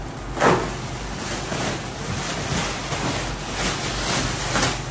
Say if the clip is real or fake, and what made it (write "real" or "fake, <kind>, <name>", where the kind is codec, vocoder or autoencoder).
real